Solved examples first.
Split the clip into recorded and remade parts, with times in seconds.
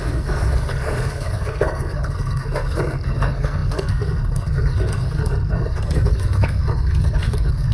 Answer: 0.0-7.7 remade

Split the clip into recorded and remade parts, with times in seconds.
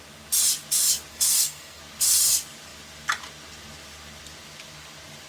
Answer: 0.0-1.1 recorded; 1.1-1.8 remade; 1.8-5.3 recorded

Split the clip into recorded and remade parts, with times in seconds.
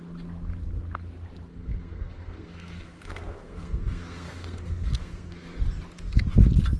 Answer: 0.0-1.5 recorded; 1.5-5.6 remade; 5.6-6.8 recorded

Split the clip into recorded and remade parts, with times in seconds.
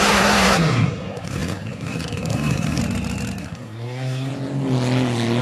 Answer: 0.0-2.8 remade; 2.8-3.4 recorded; 3.4-4.3 remade; 4.3-5.4 recorded